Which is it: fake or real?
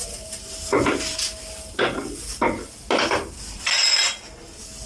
real